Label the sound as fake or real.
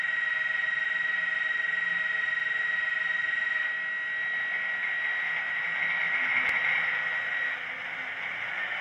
real